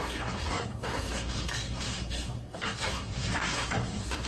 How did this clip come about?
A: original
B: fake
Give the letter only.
B